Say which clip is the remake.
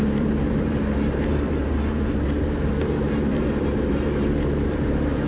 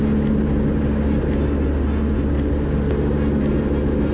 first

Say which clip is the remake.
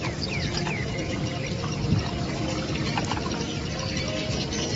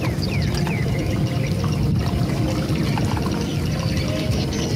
second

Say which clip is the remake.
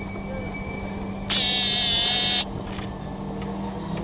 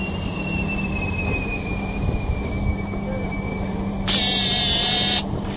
second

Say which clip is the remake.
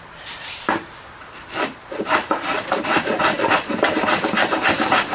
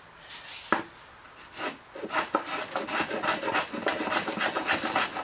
first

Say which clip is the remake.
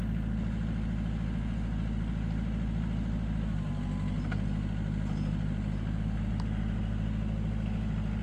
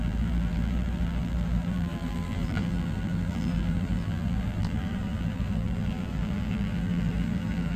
second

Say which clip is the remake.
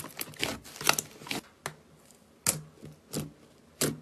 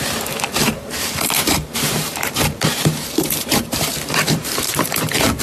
second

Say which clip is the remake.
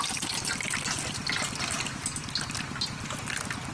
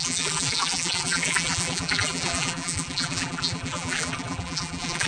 second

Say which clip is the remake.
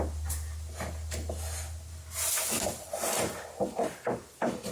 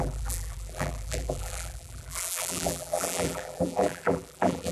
second